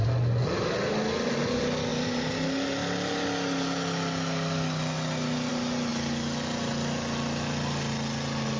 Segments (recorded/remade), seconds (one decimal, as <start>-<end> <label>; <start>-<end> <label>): 0.0-8.6 recorded